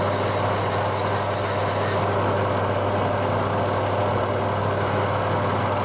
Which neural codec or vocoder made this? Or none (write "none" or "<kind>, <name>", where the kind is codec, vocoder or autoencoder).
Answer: none